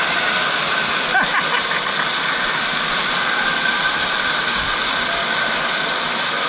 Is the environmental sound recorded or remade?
recorded